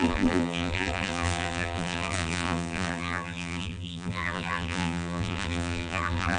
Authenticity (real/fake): fake